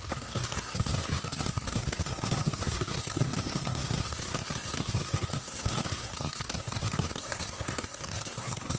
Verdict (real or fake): fake